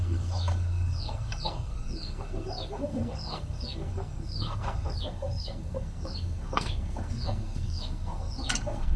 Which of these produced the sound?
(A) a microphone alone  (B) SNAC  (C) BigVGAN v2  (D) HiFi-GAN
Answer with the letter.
B